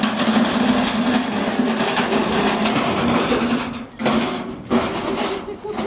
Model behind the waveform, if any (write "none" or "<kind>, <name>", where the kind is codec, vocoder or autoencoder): none